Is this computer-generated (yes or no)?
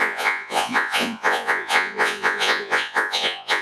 yes